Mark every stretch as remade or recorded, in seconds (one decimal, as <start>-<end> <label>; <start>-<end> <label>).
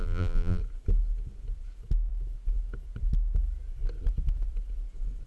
0.0-0.6 remade; 0.6-5.3 recorded